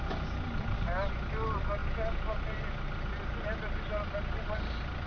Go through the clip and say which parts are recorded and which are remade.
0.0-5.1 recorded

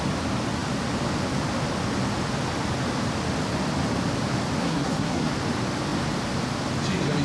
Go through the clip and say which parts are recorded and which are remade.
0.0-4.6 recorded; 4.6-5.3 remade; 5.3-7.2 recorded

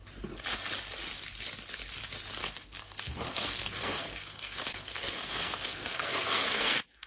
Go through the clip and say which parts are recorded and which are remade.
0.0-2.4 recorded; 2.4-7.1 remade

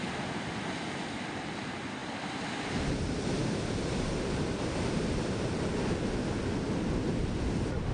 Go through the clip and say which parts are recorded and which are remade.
0.0-7.9 recorded

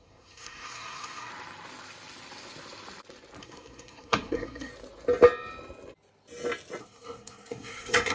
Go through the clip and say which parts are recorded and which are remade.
0.0-1.3 remade; 1.3-3.4 recorded; 3.4-4.7 remade; 4.7-6.8 recorded; 6.8-8.1 remade

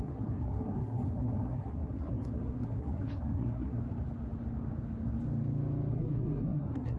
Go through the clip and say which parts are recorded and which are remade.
0.0-3.8 remade; 3.8-5.9 recorded; 5.9-7.0 remade

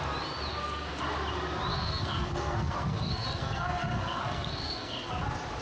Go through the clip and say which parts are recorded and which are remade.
0.0-0.5 recorded; 0.5-1.0 remade; 1.0-1.7 recorded; 1.7-5.1 remade; 5.1-5.6 recorded

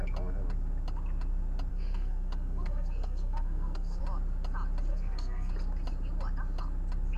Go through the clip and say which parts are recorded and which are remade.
0.0-1.7 recorded; 1.7-4.0 remade; 4.0-4.9 recorded; 4.9-5.5 remade; 5.5-7.2 recorded